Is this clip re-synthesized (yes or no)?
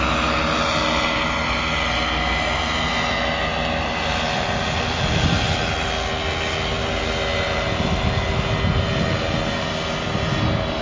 no